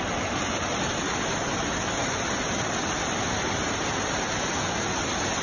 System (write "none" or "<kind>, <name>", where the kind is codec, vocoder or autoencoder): none